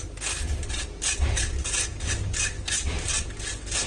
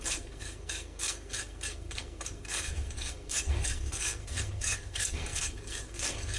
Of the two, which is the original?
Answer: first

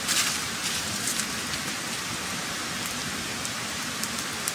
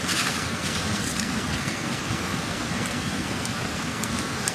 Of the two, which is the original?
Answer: first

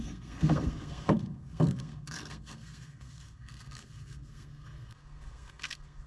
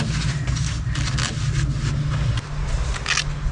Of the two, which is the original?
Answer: second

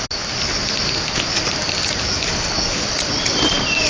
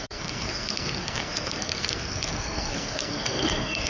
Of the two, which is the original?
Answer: first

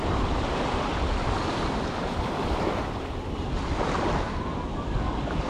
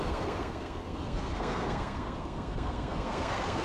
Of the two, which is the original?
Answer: first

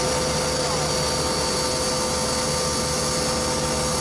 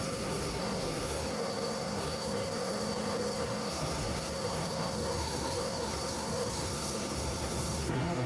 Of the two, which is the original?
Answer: first